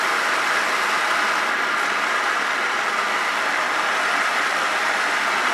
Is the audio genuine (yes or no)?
yes